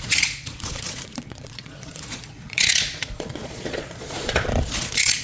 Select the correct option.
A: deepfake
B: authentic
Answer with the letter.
A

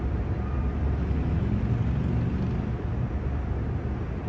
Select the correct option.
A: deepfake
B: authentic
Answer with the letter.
B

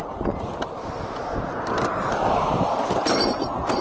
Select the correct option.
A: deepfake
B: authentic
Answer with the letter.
B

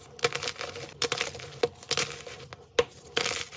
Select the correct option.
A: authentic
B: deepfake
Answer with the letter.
A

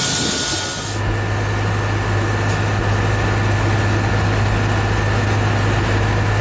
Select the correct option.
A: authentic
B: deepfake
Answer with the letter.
A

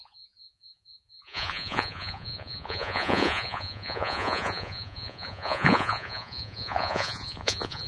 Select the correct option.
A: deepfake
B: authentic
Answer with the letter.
A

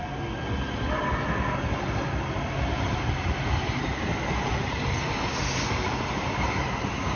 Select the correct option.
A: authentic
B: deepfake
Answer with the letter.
A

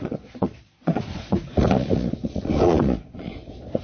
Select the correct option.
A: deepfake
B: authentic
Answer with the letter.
A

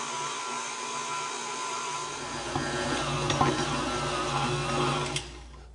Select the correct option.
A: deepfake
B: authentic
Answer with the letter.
B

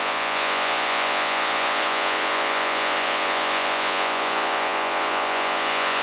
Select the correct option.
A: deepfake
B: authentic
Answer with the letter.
A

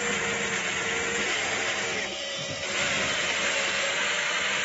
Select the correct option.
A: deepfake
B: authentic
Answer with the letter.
B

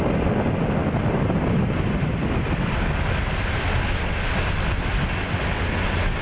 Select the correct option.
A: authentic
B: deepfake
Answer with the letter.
A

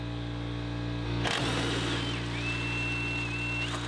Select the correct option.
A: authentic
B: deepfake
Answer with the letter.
A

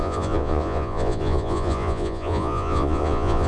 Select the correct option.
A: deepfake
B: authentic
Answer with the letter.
A